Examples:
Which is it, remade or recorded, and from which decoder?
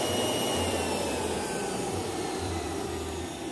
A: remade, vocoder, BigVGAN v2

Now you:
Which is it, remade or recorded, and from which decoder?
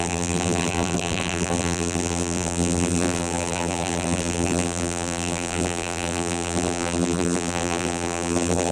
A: remade, vocoder, BigVGAN v2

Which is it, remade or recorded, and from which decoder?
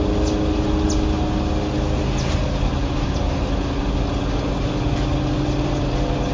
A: recorded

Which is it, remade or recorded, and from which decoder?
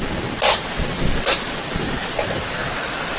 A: recorded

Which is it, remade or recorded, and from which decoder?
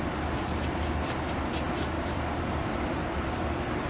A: remade, vocoder, BigVGAN v2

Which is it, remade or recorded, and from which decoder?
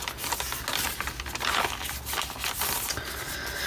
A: recorded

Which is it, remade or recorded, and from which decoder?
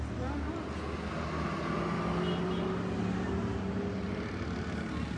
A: recorded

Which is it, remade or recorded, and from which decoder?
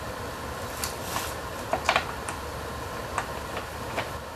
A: remade, vocoder, BigVGAN v2